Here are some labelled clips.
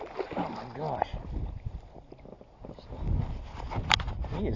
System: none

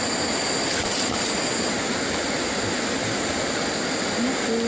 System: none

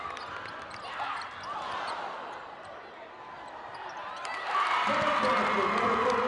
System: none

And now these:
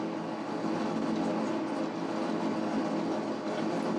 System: none